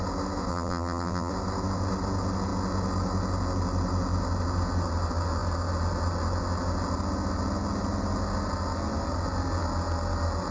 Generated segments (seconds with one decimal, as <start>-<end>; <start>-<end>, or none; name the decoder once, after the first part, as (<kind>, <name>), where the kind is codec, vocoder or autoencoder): 0.5-1.3 (vocoder, BigVGAN v2)

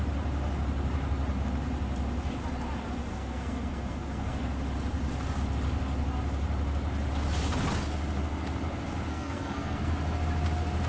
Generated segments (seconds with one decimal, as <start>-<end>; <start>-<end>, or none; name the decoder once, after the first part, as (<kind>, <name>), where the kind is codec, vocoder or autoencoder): 3.1-4.4 (codec, SNAC); 9.1-9.9

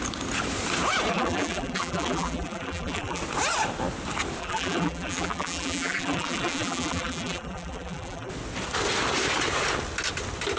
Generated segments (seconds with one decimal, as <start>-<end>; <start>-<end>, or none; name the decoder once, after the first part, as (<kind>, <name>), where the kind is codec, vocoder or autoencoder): 1.1-3.2 (vocoder, BigVGAN v2); 4.4-8.3